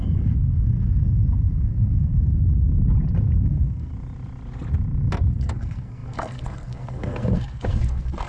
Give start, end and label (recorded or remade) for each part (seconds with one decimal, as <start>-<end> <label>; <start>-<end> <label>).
0.0-2.7 remade; 2.7-3.4 recorded; 3.4-3.9 remade; 3.9-5.3 recorded; 5.3-8.3 remade